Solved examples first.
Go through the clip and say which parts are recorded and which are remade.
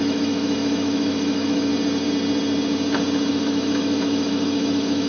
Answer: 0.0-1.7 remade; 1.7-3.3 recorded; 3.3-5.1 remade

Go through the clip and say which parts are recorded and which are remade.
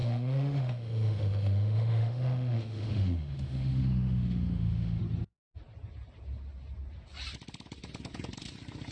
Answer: 0.0-5.0 remade; 5.0-8.9 recorded